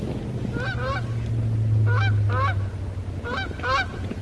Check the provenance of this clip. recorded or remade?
recorded